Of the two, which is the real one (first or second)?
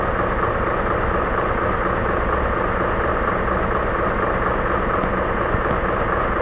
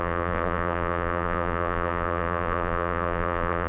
first